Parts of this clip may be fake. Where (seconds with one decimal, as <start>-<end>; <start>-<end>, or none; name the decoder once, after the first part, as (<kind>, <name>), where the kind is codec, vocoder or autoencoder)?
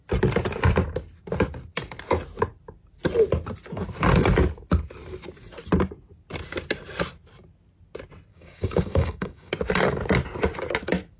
8.3-9.5 (codec, DAC)